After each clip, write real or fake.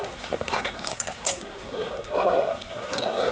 fake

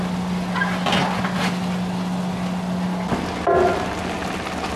real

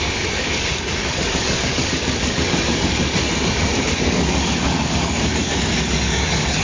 fake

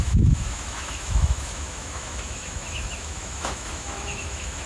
fake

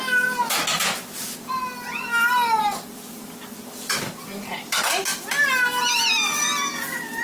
real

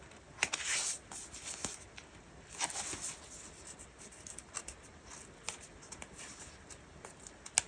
real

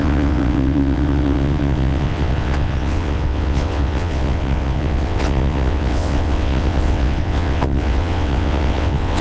fake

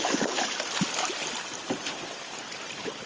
real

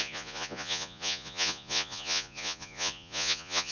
fake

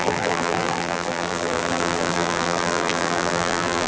fake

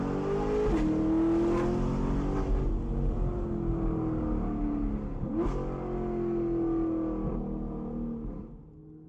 real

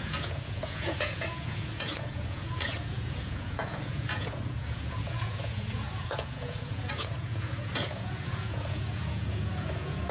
fake